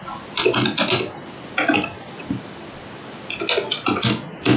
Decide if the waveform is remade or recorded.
recorded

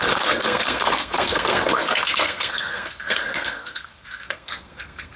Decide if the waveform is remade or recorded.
remade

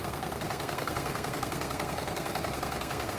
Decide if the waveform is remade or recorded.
remade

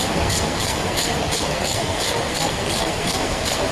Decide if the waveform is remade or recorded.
remade